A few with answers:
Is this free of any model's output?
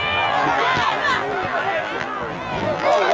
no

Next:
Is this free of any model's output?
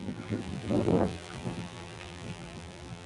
no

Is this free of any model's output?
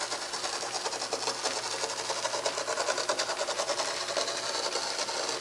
yes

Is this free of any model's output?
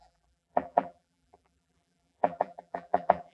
no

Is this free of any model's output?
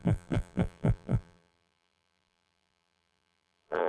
no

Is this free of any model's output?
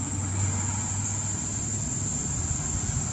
yes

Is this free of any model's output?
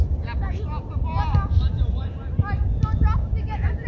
yes